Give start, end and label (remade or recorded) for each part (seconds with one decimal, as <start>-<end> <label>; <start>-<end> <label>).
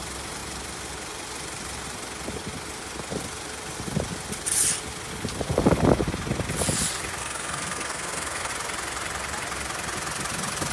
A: 0.0-7.2 recorded; 7.2-8.5 remade; 8.5-10.7 recorded